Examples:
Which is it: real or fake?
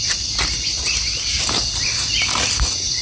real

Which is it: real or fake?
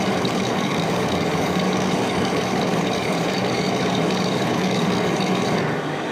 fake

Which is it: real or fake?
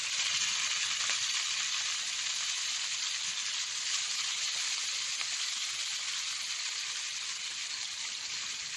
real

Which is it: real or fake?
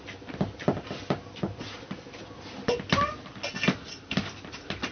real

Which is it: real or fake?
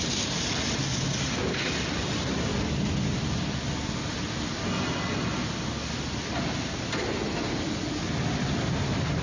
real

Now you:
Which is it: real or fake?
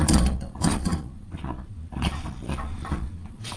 fake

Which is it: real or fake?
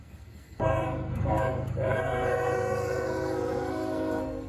fake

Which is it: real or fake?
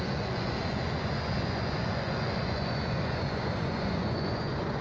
fake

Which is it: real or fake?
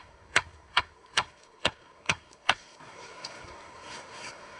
fake